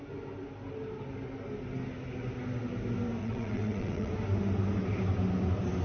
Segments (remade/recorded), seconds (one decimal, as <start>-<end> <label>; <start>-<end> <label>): 0.0-3.2 recorded; 3.2-4.1 remade; 4.1-5.8 recorded

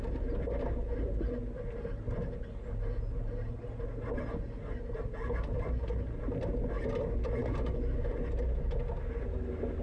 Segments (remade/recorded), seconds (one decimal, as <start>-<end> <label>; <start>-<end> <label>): 0.0-9.8 recorded

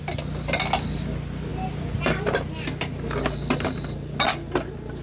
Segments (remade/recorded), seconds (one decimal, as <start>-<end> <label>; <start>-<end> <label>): 0.0-5.0 recorded